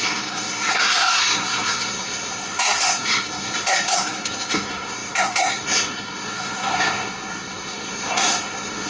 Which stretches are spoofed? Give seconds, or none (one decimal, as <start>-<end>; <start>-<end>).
0.0-8.9